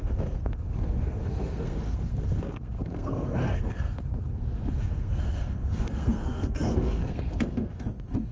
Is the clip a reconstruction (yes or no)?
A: yes